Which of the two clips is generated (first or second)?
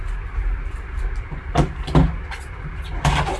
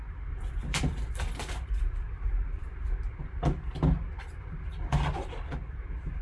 second